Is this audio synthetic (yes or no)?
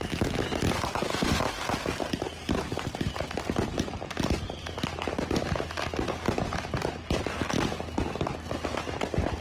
no